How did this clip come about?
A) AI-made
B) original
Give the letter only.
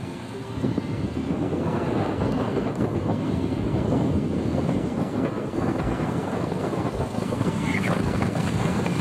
A